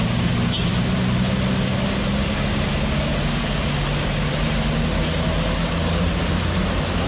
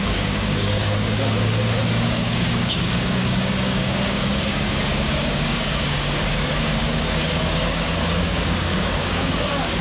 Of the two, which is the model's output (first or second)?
second